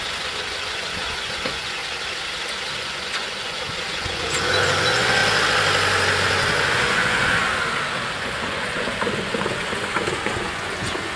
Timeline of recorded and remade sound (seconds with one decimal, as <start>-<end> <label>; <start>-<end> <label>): 0.0-1.8 remade; 1.8-2.8 recorded; 2.8-5.2 remade; 5.2-6.2 recorded; 6.2-7.5 remade; 7.5-8.1 recorded; 8.1-11.2 remade